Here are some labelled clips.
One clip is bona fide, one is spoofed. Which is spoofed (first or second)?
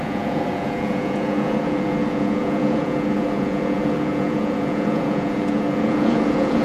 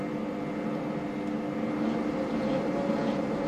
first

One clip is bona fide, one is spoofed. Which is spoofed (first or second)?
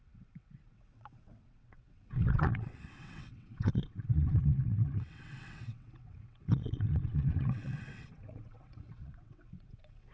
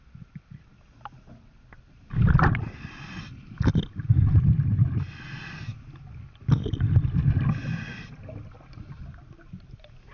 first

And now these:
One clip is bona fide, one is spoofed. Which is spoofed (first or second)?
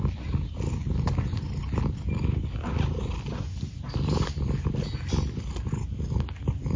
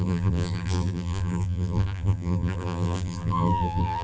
second